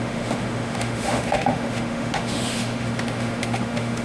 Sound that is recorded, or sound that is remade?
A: remade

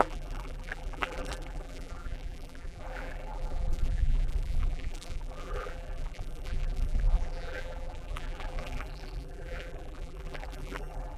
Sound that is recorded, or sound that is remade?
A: remade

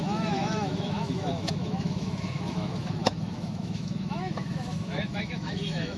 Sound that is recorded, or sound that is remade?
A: remade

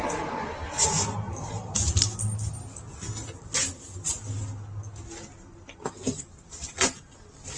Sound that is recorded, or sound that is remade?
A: recorded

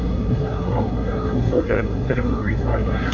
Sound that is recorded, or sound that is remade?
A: remade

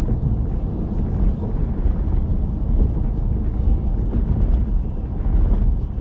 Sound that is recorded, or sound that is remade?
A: recorded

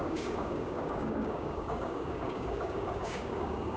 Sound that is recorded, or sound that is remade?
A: remade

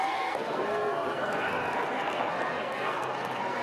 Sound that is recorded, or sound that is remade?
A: remade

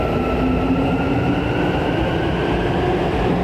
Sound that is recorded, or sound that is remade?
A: recorded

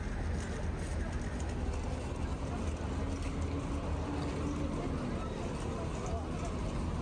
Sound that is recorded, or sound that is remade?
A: recorded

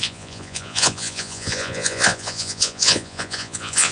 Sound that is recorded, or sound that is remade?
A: remade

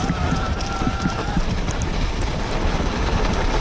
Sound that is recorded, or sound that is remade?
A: recorded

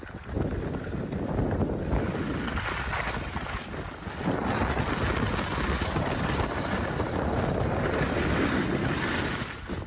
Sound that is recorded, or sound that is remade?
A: recorded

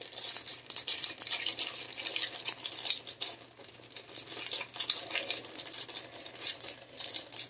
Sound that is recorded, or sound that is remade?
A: recorded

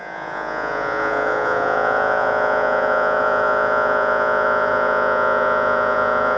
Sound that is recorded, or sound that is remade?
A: remade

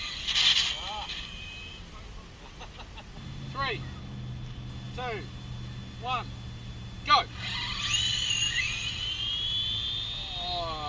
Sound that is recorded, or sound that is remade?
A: recorded